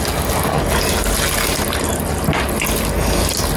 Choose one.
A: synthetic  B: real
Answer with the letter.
B